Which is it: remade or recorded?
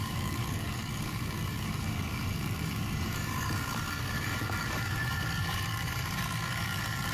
remade